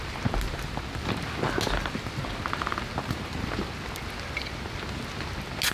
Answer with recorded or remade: recorded